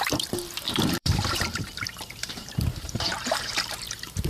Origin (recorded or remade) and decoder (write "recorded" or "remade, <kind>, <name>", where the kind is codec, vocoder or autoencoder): remade, vocoder, BigVGAN v2